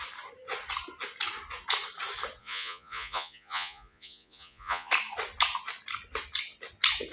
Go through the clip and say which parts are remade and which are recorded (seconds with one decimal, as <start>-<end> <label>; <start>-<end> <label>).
0.0-2.4 recorded; 2.4-4.9 remade; 4.9-7.1 recorded